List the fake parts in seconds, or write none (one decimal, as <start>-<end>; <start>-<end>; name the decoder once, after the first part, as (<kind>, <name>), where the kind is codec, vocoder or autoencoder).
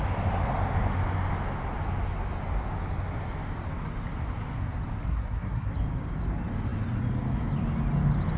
5.1-5.7 (codec, SNAC)